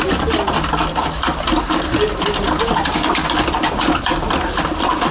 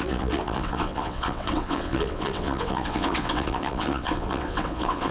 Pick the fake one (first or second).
second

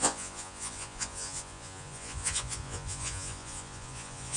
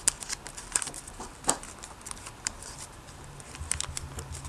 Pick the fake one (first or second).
first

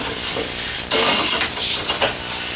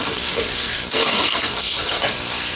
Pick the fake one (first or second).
second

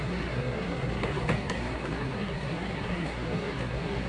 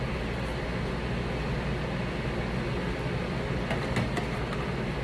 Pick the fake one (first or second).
first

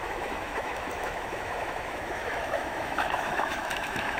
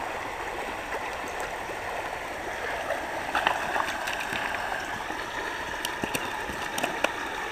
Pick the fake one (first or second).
first